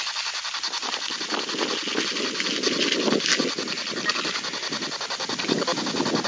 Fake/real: real